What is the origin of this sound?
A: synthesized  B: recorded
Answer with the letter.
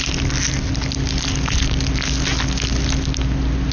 B